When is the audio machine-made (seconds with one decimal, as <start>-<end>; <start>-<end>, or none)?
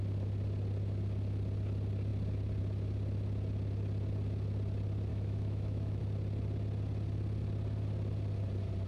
5.1-6.0